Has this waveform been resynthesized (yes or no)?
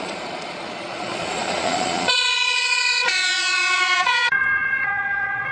yes